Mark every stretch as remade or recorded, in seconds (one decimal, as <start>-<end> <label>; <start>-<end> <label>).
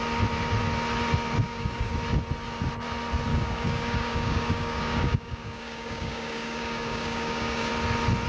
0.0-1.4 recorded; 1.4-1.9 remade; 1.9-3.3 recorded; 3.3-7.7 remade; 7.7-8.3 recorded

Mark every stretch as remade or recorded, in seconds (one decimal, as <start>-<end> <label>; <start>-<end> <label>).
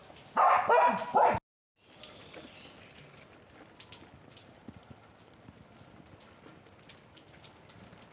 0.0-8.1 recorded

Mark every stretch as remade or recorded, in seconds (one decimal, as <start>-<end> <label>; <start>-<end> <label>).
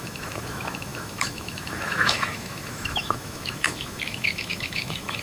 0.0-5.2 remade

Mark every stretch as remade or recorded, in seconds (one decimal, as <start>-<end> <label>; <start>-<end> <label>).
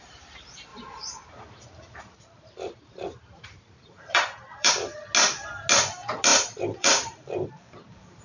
0.0-0.7 recorded; 0.7-4.7 remade; 4.7-6.3 recorded; 6.3-8.2 remade